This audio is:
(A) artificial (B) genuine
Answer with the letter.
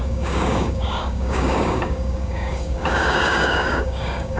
A